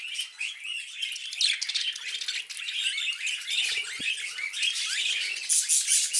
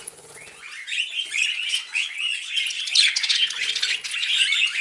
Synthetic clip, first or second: second